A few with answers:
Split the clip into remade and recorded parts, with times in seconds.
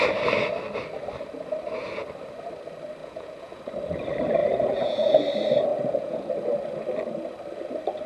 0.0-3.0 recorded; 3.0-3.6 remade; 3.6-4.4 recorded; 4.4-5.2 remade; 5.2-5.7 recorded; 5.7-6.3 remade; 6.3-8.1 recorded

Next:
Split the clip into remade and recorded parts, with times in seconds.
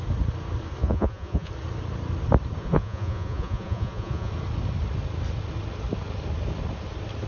0.0-0.8 recorded; 0.8-1.5 remade; 1.5-2.6 recorded; 2.6-4.3 remade; 4.3-7.3 recorded